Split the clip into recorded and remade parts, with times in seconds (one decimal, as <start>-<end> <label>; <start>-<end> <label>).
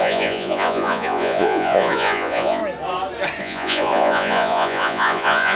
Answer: 0.0-2.6 remade; 2.6-3.4 recorded; 3.4-5.6 remade